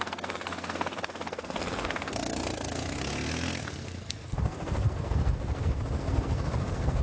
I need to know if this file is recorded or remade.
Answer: remade